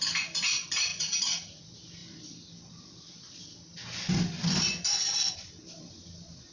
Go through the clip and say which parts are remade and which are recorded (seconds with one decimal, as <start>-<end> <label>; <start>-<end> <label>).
0.0-0.9 recorded; 0.9-1.6 remade; 1.6-6.5 recorded